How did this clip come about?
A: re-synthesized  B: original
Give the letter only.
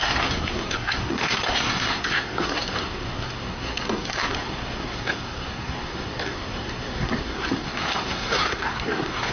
A